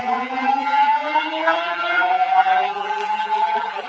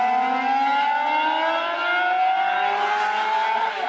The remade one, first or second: first